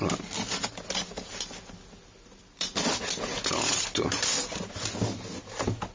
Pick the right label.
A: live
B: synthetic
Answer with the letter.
A